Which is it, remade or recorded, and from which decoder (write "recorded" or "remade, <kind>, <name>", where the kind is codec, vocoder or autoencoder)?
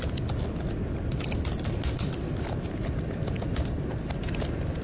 recorded